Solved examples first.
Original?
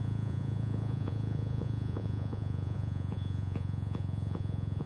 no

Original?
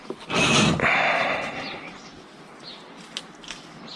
yes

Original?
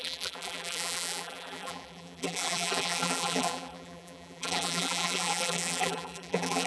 no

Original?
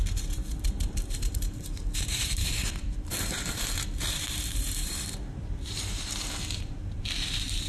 no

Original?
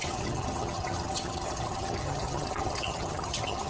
no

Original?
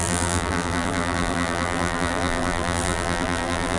no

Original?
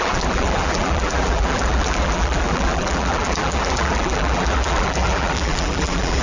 no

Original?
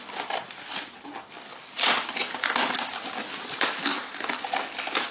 yes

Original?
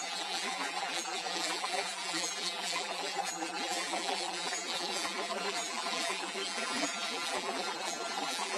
no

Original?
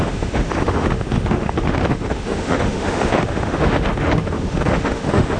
no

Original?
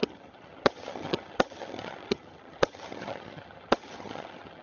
no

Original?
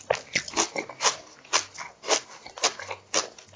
yes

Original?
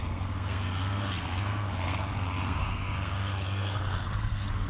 no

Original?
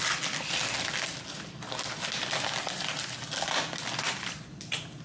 yes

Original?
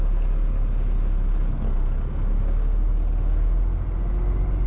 yes